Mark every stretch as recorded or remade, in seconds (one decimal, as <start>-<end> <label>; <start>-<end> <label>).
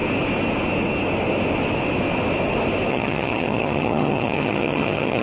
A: 0.0-2.9 recorded; 2.9-5.2 remade